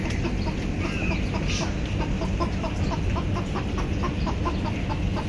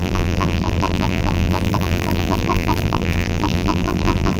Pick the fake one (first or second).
second